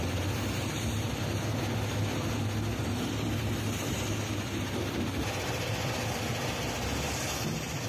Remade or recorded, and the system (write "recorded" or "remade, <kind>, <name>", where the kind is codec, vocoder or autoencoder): recorded